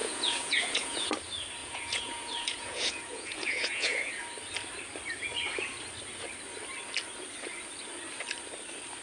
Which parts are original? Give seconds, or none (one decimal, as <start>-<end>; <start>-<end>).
1.1-1.6; 4.1-9.0